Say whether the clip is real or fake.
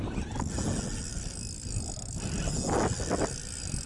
real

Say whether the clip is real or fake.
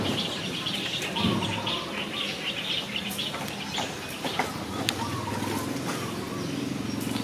real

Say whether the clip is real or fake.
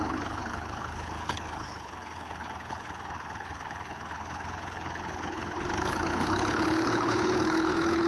fake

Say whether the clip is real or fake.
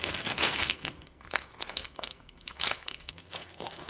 fake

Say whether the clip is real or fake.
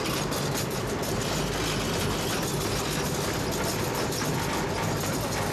real